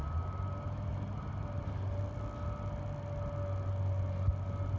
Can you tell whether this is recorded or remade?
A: recorded